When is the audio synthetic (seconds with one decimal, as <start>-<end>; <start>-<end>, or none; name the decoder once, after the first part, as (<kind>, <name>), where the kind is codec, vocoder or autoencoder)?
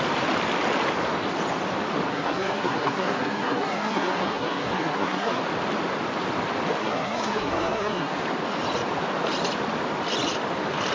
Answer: 2.1-5.4 (codec, SNAC); 6.8-8.1